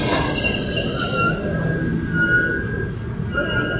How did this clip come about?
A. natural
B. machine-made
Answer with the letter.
A